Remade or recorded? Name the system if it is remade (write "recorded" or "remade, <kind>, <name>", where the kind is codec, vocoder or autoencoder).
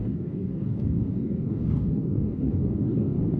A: remade, codec, DAC